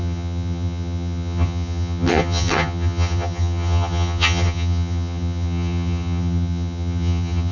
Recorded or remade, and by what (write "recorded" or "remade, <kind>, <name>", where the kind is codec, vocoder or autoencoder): remade, vocoder, HiFi-GAN